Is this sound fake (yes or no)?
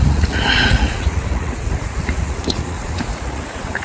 yes